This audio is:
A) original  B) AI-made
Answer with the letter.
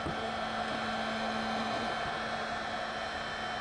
A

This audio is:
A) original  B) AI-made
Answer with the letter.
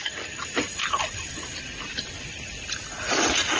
A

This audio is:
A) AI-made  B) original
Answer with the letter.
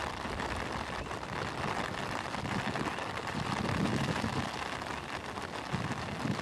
B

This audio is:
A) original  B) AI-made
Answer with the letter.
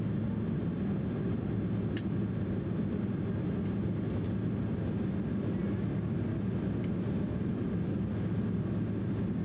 A